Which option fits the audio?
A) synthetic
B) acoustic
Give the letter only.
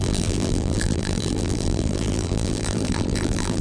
A